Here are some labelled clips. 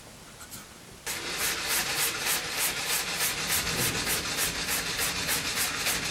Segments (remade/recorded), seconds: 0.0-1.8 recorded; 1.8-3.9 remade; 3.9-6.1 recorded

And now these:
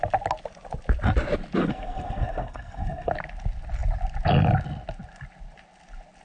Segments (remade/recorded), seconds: 0.0-1.6 recorded; 1.6-3.1 remade; 3.1-6.2 recorded

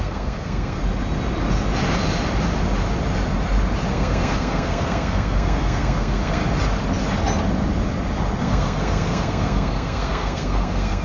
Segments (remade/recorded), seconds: 0.0-0.8 remade; 0.8-3.9 recorded; 3.9-6.4 remade; 6.4-8.4 recorded; 8.4-11.0 remade

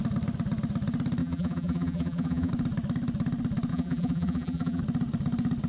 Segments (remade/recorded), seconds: 0.0-1.2 recorded; 1.2-2.5 remade; 2.5-3.7 recorded; 3.7-4.8 remade; 4.8-5.7 recorded